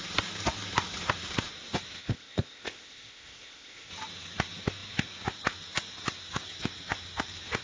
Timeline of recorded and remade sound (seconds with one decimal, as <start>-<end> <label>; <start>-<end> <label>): 0.0-2.0 recorded; 2.0-3.9 remade; 3.9-7.6 recorded